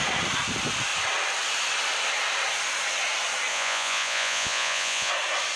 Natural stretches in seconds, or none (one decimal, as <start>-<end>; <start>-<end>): 0.0-3.5; 5.1-5.6

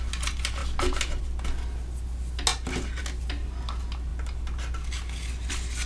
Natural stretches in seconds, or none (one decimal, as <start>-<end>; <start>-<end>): 0.0-5.9

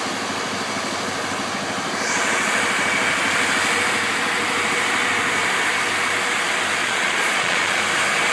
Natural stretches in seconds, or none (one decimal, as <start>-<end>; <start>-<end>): 0.0-6.8; 7.8-8.3

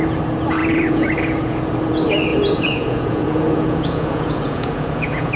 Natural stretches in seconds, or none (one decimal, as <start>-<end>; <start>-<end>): 0.0-0.6; 1.6-2.3

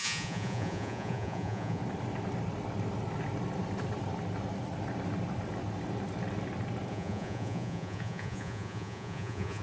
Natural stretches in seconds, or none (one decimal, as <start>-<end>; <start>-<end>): 1.8-6.9

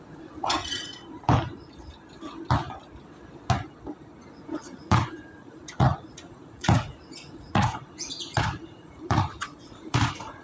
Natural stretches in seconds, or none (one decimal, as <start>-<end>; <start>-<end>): 0.9-4.4